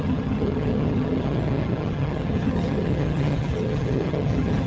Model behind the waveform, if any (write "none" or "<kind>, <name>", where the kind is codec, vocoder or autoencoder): vocoder, HiFi-GAN